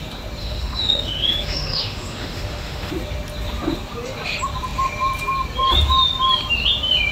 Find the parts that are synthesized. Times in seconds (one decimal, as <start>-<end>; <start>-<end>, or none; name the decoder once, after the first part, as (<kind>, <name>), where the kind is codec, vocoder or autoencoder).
0.4-2.9 (autoencoder, DAC-VAE)